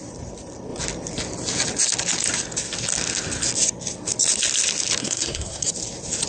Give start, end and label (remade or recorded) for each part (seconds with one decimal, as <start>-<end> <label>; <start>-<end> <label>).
0.0-5.0 recorded; 5.0-5.7 remade; 5.7-6.3 recorded